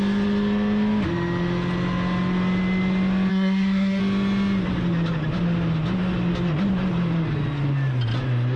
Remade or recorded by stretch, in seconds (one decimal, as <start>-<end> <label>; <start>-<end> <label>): 0.0-3.3 recorded; 3.3-4.0 remade; 4.0-8.6 recorded

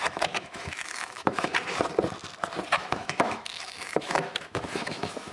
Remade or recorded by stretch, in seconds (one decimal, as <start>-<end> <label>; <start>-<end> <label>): 0.0-1.5 remade; 1.5-2.7 recorded; 2.7-5.3 remade

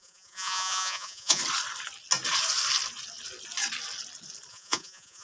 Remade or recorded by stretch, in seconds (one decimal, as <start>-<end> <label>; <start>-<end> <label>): 0.0-1.4 remade; 1.4-4.5 recorded; 4.5-5.2 remade

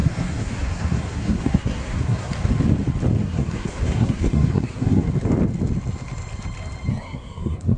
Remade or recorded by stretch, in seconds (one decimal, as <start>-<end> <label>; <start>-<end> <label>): 0.0-2.3 remade; 2.3-3.2 recorded; 3.2-5.1 remade; 5.1-6.9 recorded; 6.9-7.8 remade

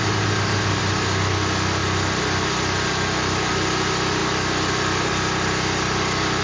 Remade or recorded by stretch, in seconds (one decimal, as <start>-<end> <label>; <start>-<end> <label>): 0.0-6.4 recorded

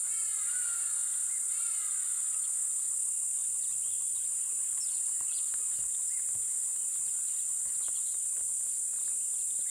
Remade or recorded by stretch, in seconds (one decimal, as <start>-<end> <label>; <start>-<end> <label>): 0.0-3.4 recorded; 3.4-5.4 remade; 5.4-9.7 recorded